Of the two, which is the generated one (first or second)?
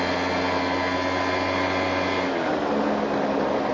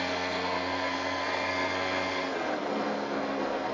second